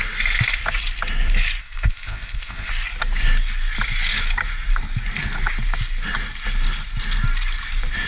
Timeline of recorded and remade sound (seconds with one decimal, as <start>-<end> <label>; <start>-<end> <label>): 0.0-1.6 recorded; 1.6-2.7 remade; 2.7-8.1 recorded